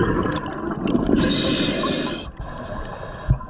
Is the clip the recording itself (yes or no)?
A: yes